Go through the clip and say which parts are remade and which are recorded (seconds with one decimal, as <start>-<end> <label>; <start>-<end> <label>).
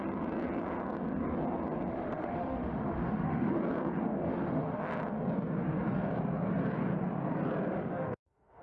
0.0-1.9 recorded; 1.9-3.5 remade; 3.5-4.2 recorded; 4.2-4.9 remade; 4.9-7.7 recorded; 7.7-8.6 remade